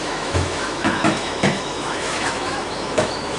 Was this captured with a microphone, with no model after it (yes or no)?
no